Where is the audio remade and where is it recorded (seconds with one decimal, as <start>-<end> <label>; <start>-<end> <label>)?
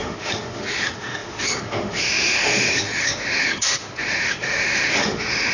0.0-5.5 remade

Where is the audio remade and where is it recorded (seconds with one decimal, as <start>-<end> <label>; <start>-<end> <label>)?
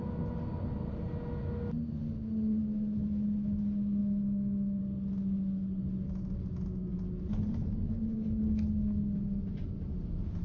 0.0-4.0 recorded; 4.0-4.8 remade; 4.8-10.4 recorded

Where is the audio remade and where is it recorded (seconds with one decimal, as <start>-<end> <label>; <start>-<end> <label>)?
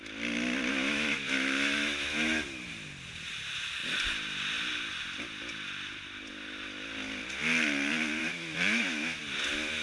0.0-0.7 recorded; 0.7-2.7 remade; 2.7-8.2 recorded; 8.2-9.2 remade; 9.2-9.8 recorded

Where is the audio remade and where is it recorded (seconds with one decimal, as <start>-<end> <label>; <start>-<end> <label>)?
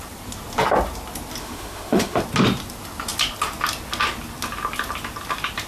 0.0-1.4 recorded; 1.4-2.2 remade; 2.2-5.7 recorded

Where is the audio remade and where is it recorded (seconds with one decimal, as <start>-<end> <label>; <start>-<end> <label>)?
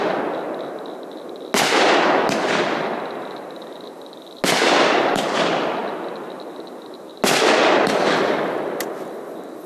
0.0-9.7 recorded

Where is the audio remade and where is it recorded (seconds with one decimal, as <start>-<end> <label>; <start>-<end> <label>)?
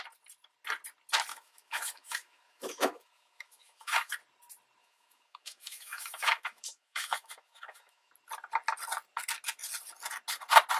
0.0-1.3 recorded; 1.3-4.1 remade; 4.1-4.8 recorded; 4.8-8.1 remade; 8.1-10.8 recorded